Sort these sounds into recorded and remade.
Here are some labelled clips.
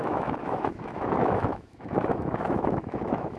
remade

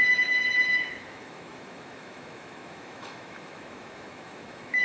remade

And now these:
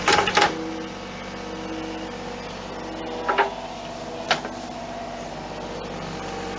recorded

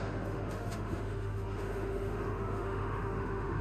remade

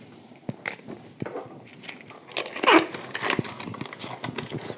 recorded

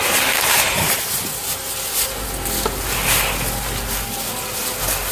recorded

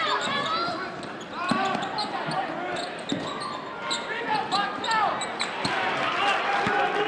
recorded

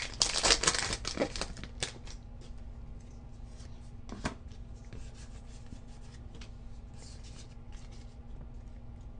recorded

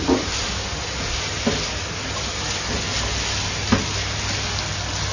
recorded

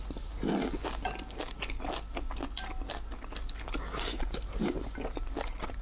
recorded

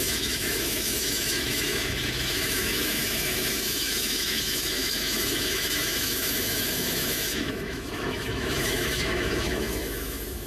remade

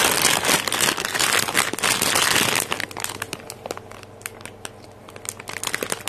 recorded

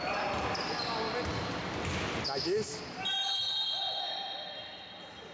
recorded